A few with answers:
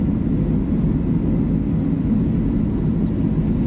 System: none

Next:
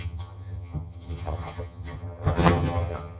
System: vocoder, HiFi-GAN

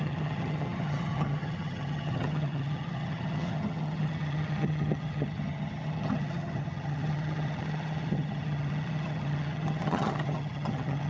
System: vocoder, HiFi-GAN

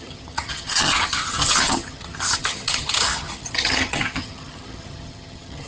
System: vocoder, HiFi-GAN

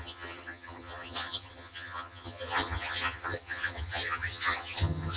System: vocoder, HiFi-GAN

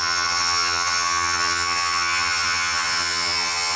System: vocoder, HiFi-GAN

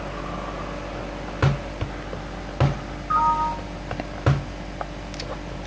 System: none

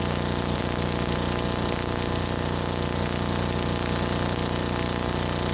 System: none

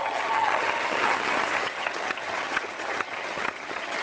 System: vocoder, HiFi-GAN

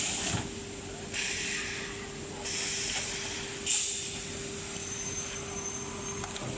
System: none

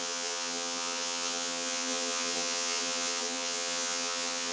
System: vocoder, HiFi-GAN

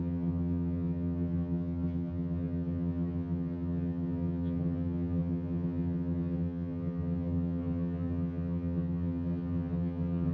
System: vocoder, HiFi-GAN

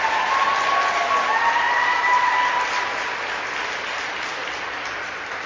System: none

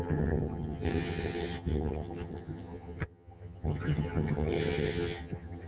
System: vocoder, HiFi-GAN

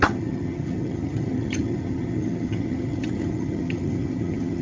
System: vocoder, HiFi-GAN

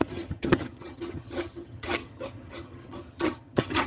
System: vocoder, HiFi-GAN